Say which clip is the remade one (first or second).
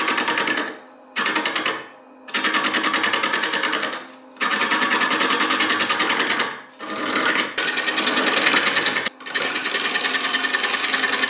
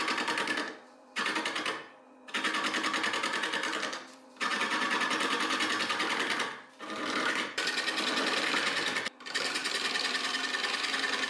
second